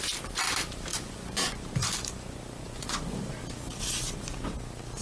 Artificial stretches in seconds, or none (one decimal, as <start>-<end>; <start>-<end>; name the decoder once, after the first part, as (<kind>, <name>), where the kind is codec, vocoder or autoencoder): 0.9-3.3 (vocoder, Vocos)